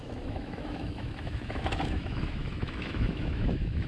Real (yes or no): no